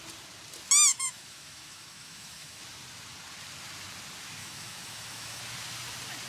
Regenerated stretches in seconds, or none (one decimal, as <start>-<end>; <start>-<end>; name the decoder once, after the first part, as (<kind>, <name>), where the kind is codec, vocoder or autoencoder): 0.9-2.6 (autoencoder, DAC-VAE); 4.4-5.4